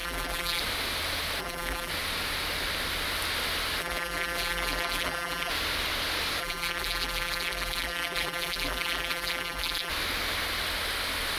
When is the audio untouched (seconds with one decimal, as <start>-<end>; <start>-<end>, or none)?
0.6-1.4; 1.9-3.8; 5.5-6.4; 9.9-11.4